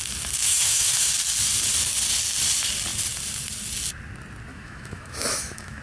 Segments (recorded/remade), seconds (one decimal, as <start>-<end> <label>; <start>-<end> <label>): 0.0-0.4 recorded; 0.4-1.1 remade; 1.1-4.5 recorded; 4.5-5.8 remade